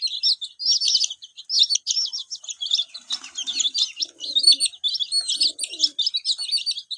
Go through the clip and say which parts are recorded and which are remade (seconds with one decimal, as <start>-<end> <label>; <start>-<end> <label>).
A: 0.0-7.0 recorded